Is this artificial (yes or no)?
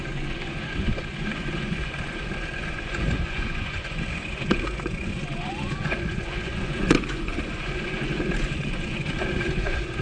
yes